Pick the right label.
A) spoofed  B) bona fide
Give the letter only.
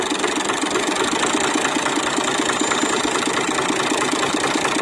B